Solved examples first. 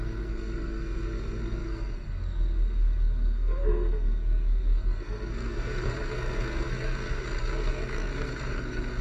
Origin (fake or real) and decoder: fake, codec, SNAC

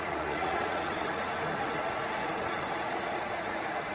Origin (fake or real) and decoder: fake, vocoder, Vocos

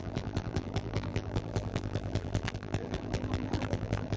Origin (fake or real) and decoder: fake, vocoder, BigVGAN v2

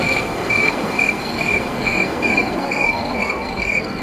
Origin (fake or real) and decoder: fake, codec, SNAC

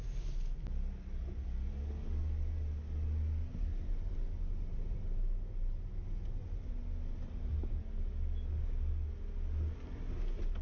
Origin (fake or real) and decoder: real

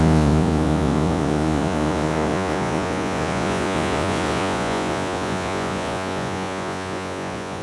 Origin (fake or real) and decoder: fake, vocoder, Vocos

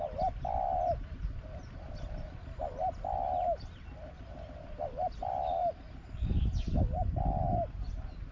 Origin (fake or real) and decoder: real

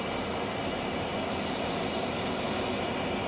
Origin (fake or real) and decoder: real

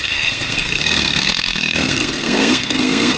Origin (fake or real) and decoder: fake, codec, SNAC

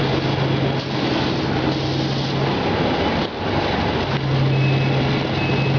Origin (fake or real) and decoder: real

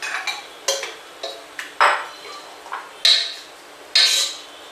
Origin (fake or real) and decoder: real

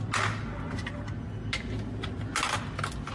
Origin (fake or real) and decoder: real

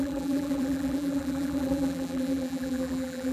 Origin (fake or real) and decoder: fake, vocoder, BigVGAN v2